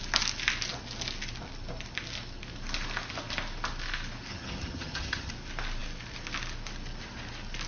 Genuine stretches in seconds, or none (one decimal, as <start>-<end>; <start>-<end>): 0.0-4.3; 5.3-7.7